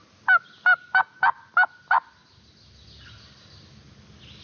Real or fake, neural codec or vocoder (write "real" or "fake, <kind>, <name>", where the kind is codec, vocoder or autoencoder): real